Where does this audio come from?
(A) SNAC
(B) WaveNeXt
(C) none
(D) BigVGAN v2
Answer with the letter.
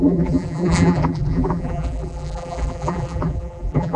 D